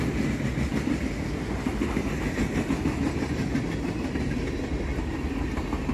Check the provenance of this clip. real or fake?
real